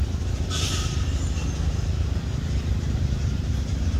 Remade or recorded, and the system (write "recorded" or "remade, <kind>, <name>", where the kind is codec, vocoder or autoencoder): recorded